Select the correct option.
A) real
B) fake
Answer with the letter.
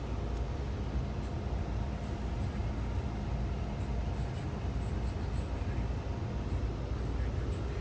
A